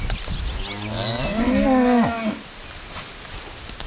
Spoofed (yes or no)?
no